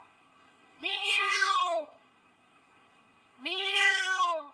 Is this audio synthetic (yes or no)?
yes